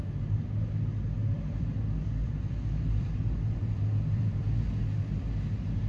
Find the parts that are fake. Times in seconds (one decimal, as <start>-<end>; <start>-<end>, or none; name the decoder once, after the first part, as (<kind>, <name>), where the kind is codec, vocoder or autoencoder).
1.2-4.4 (vocoder, BigVGAN v2)